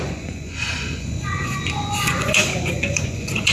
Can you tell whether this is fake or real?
fake